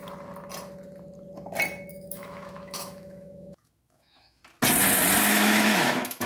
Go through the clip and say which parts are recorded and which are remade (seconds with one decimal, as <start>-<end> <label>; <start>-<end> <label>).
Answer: 0.0-1.9 recorded; 1.9-4.4 remade; 4.4-5.3 recorded; 5.3-6.3 remade